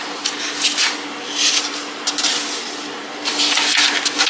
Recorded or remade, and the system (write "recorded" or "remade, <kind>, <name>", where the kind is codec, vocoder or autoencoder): recorded